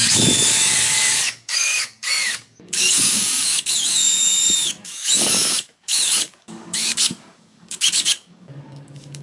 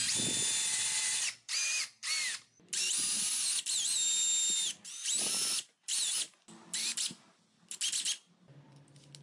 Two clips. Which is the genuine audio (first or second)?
second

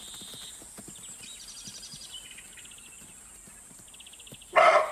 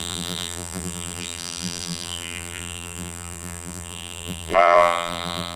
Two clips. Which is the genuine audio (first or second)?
first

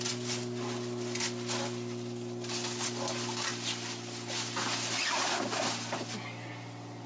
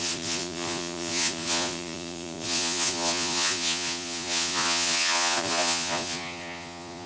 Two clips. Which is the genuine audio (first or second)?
first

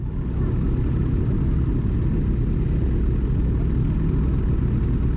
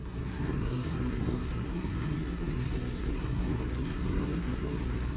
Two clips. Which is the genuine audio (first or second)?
first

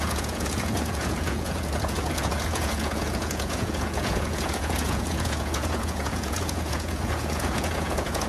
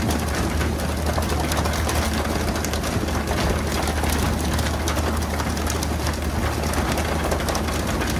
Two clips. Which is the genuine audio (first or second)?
second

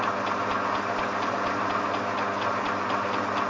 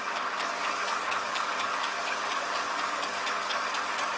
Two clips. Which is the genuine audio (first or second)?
first